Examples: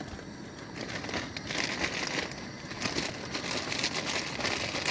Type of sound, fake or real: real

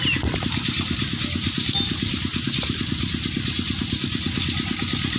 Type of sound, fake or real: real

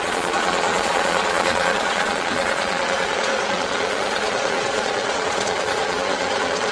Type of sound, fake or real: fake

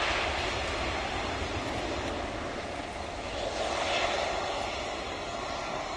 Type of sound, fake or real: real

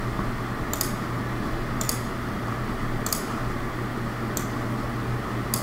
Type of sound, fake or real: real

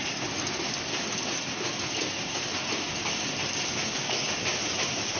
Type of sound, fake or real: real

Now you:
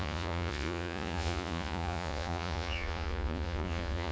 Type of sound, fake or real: fake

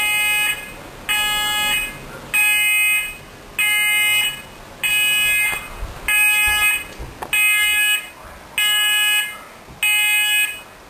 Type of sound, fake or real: real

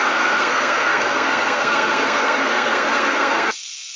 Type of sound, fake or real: fake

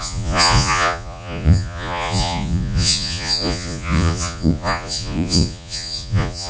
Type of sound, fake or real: fake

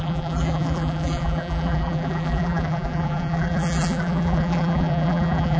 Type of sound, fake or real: fake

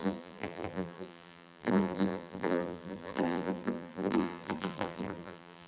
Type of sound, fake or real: fake